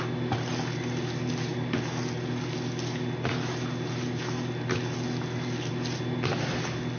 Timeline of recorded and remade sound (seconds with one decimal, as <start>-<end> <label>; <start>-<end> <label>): 0.0-7.0 recorded